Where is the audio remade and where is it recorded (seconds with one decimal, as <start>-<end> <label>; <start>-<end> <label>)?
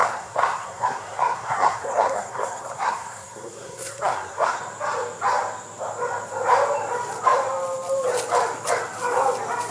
0.0-4.6 remade; 4.6-9.7 recorded